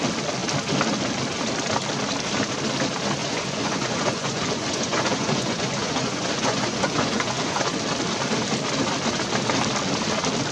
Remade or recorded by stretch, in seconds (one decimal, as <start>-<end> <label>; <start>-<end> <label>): 0.0-3.2 recorded; 3.2-7.8 remade; 7.8-10.5 recorded